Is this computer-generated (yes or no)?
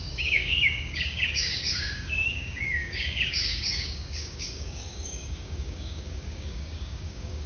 yes